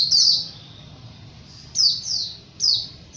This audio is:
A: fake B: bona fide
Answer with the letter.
B